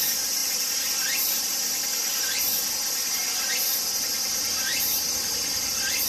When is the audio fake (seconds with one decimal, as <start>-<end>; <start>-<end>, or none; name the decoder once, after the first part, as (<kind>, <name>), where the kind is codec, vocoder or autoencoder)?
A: 0.4-3.5 (vocoder, BigVGAN v2); 4.7-6.1